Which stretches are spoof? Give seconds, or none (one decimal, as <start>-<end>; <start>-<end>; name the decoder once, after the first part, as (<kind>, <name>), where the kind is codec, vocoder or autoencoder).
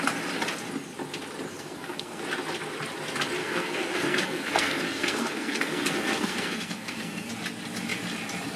1.5-2.2 (codec, SNAC); 3.4-7.3